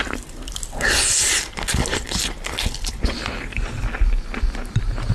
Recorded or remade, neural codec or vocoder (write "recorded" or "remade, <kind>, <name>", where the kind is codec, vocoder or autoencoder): recorded